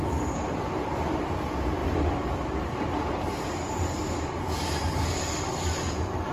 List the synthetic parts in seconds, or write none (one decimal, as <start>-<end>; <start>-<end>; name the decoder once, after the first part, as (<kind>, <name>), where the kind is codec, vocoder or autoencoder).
1.8-5.3 (vocoder, BigVGAN v2)